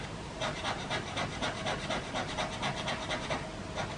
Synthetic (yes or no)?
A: yes